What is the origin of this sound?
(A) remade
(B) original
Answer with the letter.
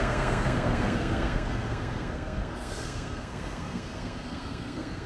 A